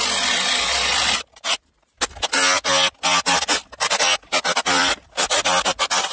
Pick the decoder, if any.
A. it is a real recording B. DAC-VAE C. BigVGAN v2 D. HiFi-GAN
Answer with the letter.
A